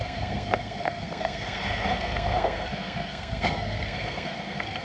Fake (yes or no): yes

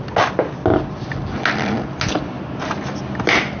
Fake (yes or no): no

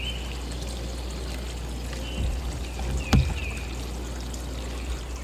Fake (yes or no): no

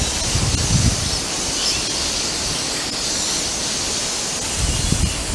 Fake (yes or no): no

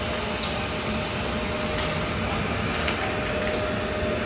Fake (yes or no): no